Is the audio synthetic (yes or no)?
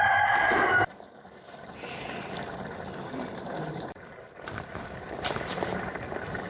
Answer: yes